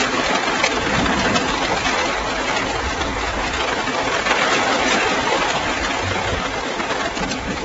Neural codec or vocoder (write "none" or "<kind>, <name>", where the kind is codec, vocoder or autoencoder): none